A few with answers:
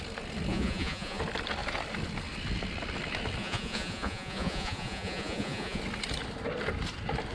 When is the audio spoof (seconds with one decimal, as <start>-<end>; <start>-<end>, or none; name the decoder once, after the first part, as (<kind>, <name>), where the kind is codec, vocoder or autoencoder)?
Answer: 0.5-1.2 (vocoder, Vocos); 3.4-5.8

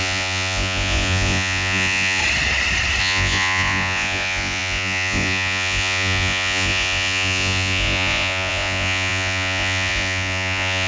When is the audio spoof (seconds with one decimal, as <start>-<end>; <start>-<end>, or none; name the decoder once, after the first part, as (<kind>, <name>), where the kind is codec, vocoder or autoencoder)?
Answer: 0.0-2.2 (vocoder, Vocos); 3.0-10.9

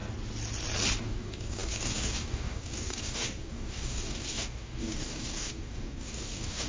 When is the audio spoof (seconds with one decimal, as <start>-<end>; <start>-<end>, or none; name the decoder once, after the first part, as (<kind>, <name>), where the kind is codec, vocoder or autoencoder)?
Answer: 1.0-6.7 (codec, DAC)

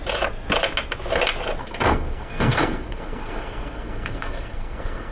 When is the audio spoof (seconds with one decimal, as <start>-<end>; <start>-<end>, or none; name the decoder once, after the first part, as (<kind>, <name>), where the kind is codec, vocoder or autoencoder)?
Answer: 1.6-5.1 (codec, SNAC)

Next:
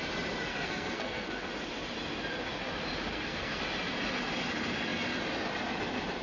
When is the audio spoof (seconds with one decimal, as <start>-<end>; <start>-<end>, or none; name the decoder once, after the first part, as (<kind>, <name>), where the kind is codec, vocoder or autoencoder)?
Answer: 0.5-1.5 (codec, SNAC); 3.1-3.6